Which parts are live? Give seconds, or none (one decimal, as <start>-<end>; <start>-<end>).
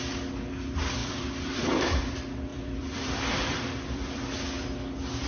0.0-1.0; 2.0-2.5; 4.2-5.3